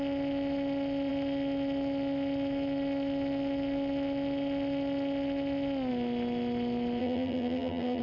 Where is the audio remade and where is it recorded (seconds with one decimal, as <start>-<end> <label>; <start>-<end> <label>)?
0.0-7.0 recorded; 7.0-8.0 remade